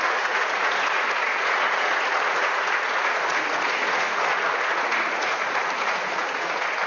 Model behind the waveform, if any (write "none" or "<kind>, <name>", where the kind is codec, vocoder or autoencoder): vocoder, Vocos